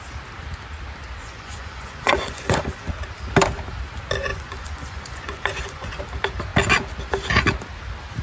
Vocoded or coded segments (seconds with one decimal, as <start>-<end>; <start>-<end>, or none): 1.2-2.9; 4.3-6.0